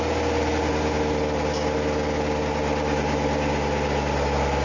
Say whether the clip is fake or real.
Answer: real